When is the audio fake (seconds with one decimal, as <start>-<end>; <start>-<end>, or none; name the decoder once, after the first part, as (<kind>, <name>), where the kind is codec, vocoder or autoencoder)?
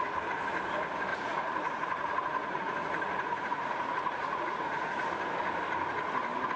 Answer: 1.1-5.1 (vocoder, Vocos)